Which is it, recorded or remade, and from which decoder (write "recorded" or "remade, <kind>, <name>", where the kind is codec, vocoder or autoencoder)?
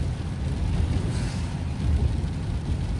recorded